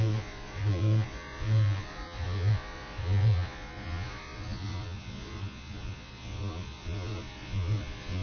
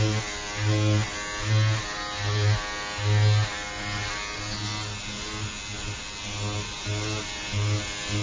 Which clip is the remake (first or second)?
first